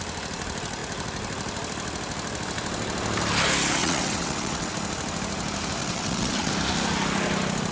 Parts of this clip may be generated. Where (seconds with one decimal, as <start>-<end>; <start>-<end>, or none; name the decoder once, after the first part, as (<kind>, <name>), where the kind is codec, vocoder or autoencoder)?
3.8-4.7 (vocoder, WaveNeXt); 5.8-6.5